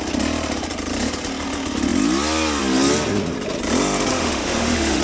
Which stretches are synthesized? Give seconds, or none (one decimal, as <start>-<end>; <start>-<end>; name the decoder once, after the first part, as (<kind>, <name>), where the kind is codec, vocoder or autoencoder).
4.1-5.0 (autoencoder, DAC-VAE)